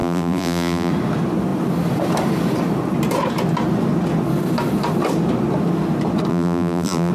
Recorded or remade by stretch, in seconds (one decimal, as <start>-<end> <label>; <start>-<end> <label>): 0.0-0.9 remade; 0.9-6.3 recorded; 6.3-7.1 remade